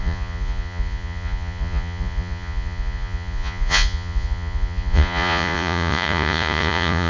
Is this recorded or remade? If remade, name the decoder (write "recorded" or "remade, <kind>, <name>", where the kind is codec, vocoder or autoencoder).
remade, vocoder, Vocos